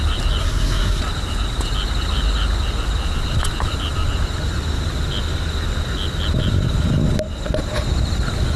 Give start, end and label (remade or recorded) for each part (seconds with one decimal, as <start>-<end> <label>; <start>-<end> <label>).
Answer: 0.0-0.4 recorded; 0.4-1.0 remade; 1.0-8.6 recorded